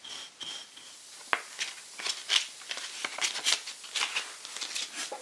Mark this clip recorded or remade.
recorded